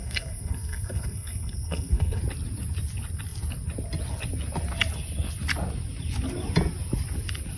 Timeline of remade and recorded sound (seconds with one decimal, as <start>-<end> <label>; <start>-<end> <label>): 0.0-2.2 remade; 2.2-7.6 recorded